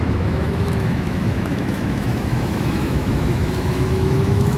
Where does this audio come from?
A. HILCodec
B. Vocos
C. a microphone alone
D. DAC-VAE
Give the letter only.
D